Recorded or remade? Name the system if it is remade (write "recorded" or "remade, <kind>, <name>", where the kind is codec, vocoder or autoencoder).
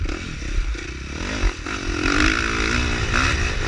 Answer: recorded